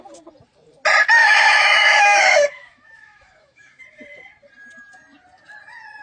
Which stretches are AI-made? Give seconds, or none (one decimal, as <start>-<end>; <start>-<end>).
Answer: 1.2-3.8